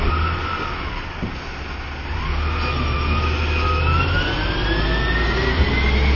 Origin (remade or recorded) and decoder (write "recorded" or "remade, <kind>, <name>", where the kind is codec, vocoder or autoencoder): recorded